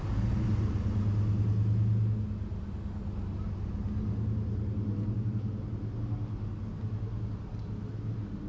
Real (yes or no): yes